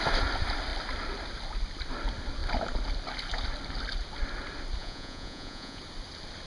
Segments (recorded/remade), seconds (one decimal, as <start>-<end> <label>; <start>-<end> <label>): 0.0-4.8 recorded; 4.8-5.8 remade; 5.8-6.5 recorded